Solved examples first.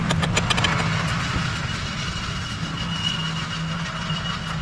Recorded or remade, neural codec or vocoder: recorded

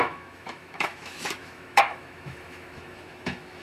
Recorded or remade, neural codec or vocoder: remade, autoencoder, DAC-VAE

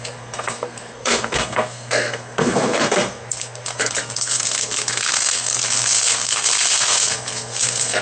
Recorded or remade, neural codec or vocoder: remade, codec, SNAC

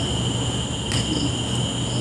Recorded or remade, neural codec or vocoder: recorded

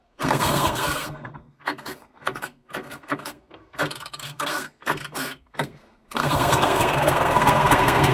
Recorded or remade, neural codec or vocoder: remade, codec, SNAC